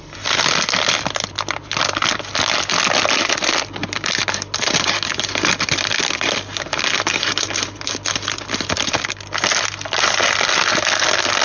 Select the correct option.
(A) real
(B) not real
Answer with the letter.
A